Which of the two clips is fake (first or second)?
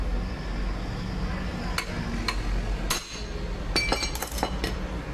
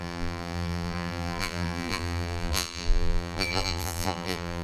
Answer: second